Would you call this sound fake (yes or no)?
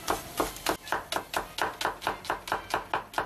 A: no